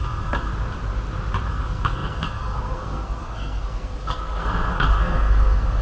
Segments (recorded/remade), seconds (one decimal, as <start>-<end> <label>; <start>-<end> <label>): 0.0-0.5 remade; 0.5-1.5 recorded; 1.5-5.8 remade